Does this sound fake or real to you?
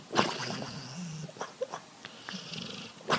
real